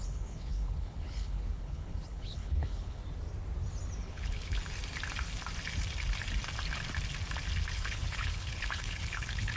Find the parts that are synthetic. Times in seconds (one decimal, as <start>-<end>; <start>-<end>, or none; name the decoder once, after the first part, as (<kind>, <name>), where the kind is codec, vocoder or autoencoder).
0.0-3.0 (codec, HILCodec); 4.0-4.6; 7.7-9.6